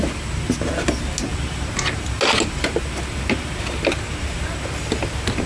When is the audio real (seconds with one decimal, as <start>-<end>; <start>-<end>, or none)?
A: 0.0-5.5